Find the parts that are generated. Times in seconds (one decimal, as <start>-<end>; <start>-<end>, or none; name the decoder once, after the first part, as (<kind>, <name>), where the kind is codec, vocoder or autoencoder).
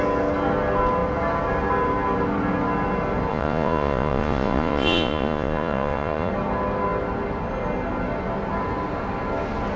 3.3-6.3 (vocoder, Vocos)